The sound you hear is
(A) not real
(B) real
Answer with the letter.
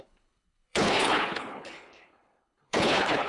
A